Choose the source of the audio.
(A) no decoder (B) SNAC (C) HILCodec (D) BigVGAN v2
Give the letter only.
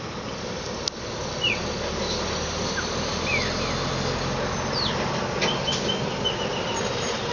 A